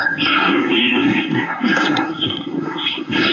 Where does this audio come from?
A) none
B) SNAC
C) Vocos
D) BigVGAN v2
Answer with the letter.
B